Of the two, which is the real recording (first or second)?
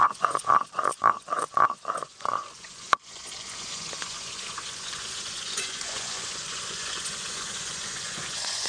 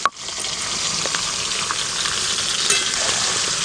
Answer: second